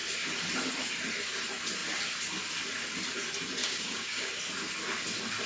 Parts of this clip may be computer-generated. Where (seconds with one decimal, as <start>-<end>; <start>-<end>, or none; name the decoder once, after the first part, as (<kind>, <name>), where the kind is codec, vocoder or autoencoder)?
3.6-4.3 (codec, DAC)